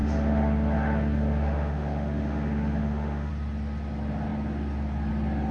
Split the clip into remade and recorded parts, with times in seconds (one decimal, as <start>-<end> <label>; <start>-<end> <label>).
0.0-3.3 remade; 3.3-5.5 recorded